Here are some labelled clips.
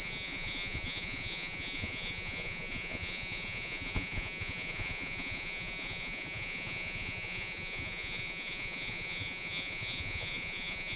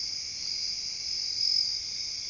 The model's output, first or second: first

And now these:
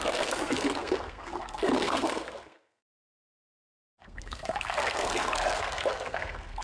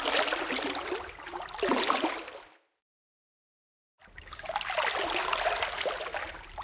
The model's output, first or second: first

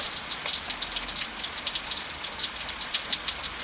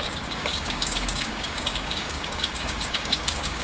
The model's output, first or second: second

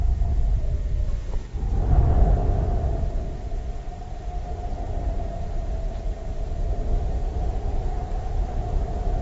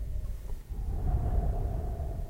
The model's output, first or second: second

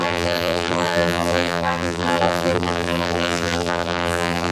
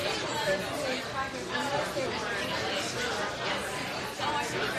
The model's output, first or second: first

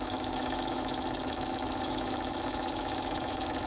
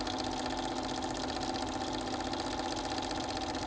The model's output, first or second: first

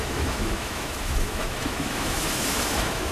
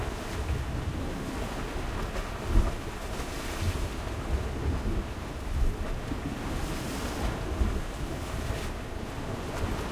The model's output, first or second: first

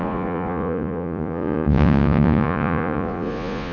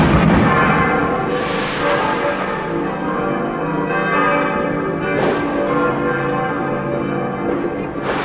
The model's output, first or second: first